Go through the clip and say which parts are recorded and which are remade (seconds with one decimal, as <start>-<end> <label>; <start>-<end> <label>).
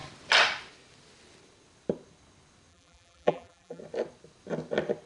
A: 0.0-2.7 recorded; 2.7-3.8 remade; 3.8-5.1 recorded